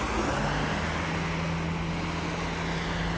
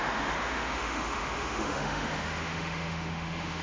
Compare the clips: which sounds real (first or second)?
first